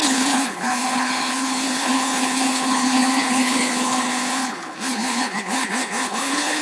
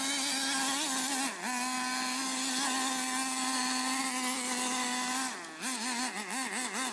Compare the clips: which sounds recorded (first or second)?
second